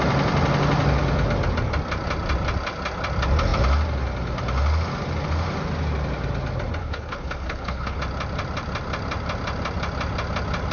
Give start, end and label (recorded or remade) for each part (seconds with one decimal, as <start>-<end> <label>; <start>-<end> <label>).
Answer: 0.0-6.8 recorded; 6.8-8.0 remade; 8.0-10.7 recorded